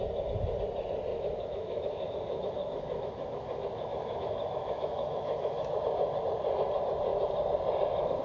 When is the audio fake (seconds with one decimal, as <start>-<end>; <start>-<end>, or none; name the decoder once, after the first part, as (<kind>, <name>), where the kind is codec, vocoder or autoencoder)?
1.1-5.8 (autoencoder, DAC-VAE)